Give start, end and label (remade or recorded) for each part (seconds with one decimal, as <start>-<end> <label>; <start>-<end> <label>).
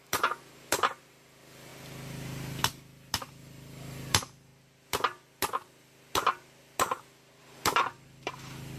0.0-1.7 remade; 1.7-3.3 recorded; 3.3-4.5 remade; 4.5-7.4 recorded; 7.4-8.8 remade